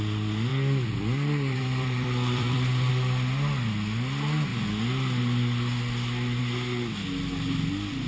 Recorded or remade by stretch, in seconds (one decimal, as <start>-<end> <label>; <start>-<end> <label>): 0.0-0.5 recorded; 0.5-2.9 remade; 2.9-8.1 recorded